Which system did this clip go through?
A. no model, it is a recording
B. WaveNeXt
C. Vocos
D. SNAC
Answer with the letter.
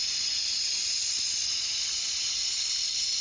A